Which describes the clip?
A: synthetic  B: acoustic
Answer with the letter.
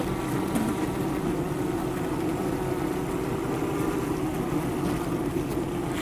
B